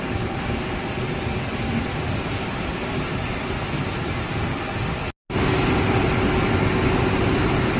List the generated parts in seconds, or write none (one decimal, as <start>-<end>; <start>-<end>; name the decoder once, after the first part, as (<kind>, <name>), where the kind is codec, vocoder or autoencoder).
none